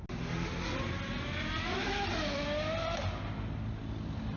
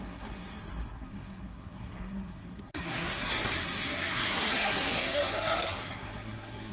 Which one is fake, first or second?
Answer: second